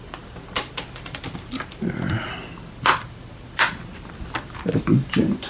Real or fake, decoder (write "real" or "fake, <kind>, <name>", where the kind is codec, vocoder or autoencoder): fake, vocoder, BigVGAN v2